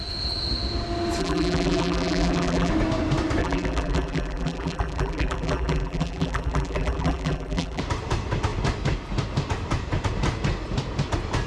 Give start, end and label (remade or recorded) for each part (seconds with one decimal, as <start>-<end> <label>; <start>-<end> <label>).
0.0-1.2 recorded; 1.2-2.7 remade; 2.7-3.4 recorded; 3.4-7.8 remade; 7.8-11.5 recorded